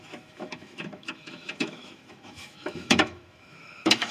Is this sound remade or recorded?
remade